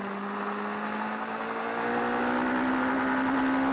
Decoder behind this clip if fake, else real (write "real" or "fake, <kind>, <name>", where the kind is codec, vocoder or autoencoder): real